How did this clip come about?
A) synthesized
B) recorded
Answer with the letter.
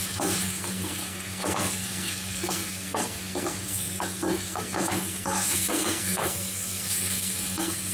A